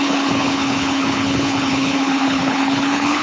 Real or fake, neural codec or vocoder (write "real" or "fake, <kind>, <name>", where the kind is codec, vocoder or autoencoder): fake, codec, HILCodec